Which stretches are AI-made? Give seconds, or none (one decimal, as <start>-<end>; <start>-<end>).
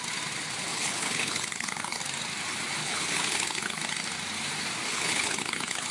0.7-2.0; 2.8-3.8; 4.9-5.9